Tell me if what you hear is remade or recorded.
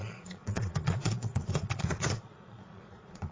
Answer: remade